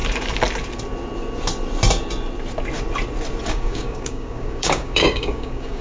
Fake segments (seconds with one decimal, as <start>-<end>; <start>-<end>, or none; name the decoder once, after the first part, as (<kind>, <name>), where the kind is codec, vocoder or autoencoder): 3.5-5.8 (codec, DAC)